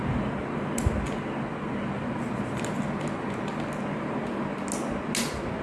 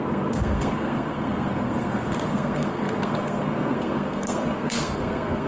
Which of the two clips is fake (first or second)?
second